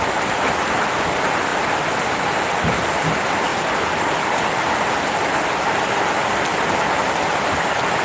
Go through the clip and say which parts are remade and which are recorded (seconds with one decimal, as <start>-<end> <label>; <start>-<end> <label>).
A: 0.0-8.0 recorded